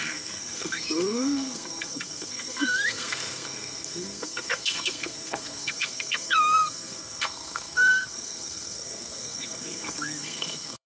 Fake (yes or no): yes